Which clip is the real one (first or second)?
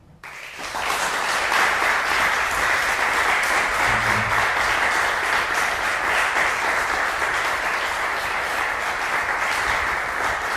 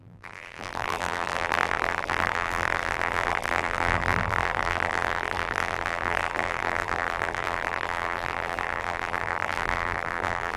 first